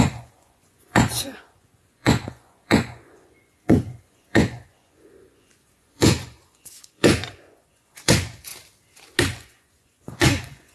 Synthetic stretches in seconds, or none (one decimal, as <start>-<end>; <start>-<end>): 0.0-8.5; 9.2-10.7